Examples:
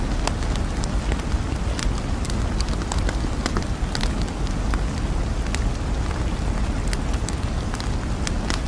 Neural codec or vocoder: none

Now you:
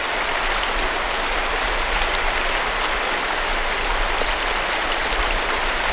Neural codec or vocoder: none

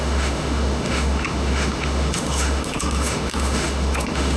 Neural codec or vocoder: autoencoder, DAC-VAE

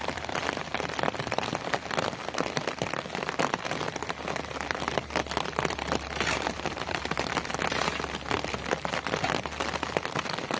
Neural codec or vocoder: none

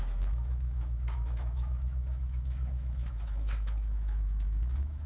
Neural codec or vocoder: autoencoder, DAC-VAE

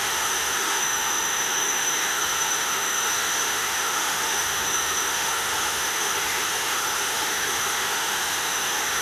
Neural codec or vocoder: autoencoder, DAC-VAE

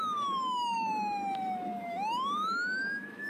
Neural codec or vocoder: autoencoder, DAC-VAE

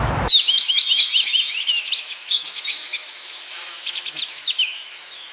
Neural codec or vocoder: autoencoder, DAC-VAE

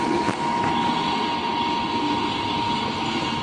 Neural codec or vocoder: none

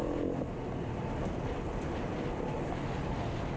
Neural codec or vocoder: none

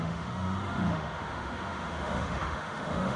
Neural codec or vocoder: autoencoder, DAC-VAE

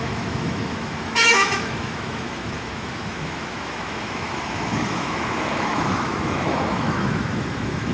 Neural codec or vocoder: autoencoder, DAC-VAE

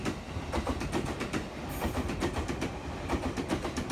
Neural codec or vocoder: none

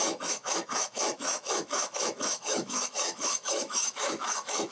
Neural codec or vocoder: autoencoder, DAC-VAE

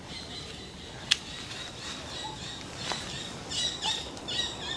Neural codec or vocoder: none